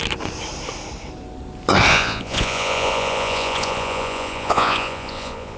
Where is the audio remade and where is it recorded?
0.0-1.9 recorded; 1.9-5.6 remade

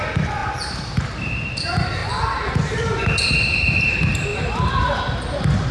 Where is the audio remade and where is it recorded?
0.0-5.7 remade